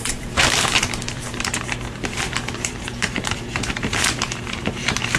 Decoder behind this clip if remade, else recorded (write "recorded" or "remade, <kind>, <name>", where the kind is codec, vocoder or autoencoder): remade, vocoder, BigVGAN v2